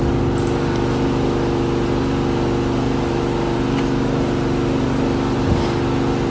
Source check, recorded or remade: recorded